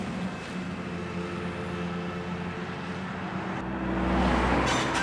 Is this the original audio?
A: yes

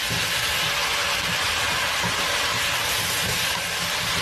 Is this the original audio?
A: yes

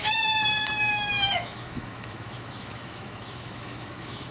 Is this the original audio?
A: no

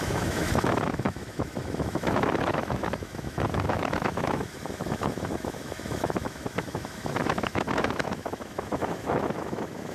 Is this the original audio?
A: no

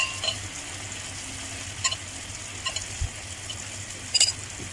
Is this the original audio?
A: yes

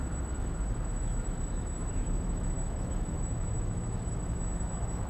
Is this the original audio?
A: no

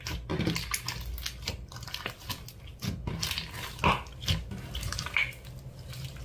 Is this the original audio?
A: yes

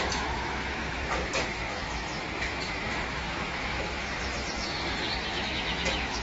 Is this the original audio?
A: no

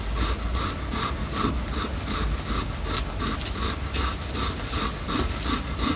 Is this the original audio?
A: yes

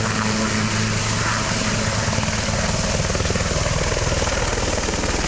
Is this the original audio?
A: yes